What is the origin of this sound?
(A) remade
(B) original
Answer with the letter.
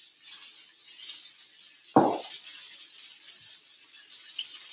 B